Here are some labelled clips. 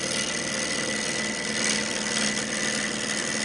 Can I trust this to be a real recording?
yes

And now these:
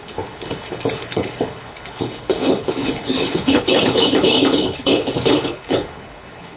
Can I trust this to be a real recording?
no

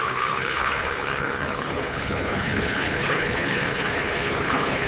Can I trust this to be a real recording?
no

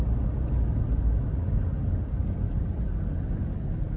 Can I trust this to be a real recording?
yes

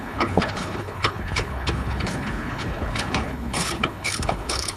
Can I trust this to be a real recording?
no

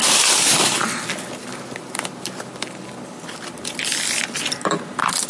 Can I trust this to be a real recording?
yes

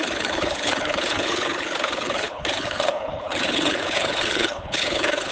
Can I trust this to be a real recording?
no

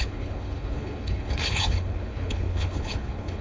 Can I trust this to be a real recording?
no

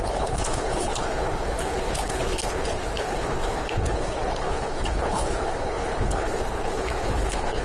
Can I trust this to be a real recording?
no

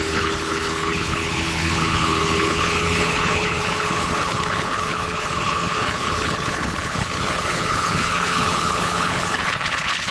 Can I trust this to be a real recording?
no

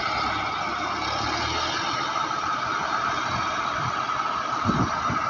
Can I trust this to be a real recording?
yes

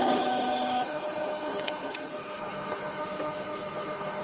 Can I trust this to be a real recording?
no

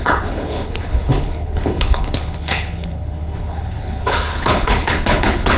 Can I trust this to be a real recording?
no